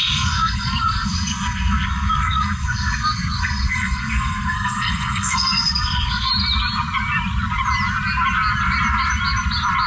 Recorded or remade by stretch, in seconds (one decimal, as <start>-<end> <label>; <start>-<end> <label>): 0.0-6.3 remade; 6.3-9.9 recorded